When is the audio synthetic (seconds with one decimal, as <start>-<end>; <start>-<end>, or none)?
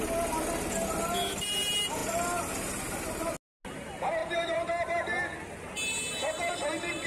4.2-5.2